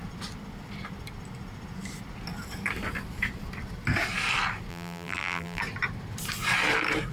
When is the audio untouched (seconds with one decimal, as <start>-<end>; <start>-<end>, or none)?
0.0-4.7; 5.6-7.1